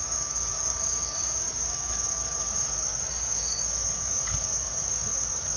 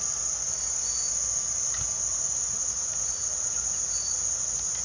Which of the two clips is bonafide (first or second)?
second